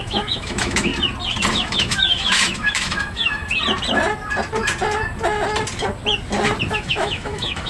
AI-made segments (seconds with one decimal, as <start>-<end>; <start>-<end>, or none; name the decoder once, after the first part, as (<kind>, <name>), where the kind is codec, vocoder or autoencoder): 0.0-0.9 (autoencoder, DAC-VAE); 1.5-3.4; 6.7-7.7